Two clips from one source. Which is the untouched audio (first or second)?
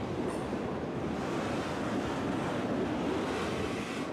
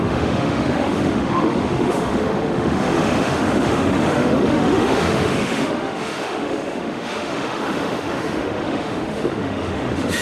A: first